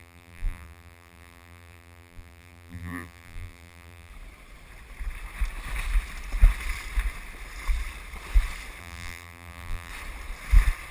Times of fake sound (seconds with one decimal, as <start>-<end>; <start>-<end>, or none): 0.0-4.1; 8.8-9.9